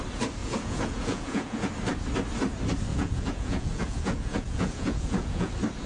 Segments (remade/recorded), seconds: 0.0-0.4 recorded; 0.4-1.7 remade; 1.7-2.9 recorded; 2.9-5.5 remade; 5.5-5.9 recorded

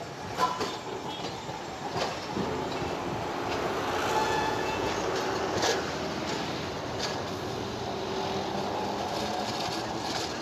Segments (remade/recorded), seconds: 0.0-4.2 recorded; 4.2-4.9 remade; 4.9-10.4 recorded